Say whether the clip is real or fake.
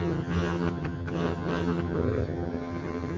fake